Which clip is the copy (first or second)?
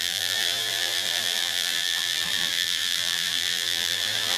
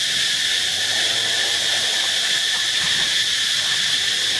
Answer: first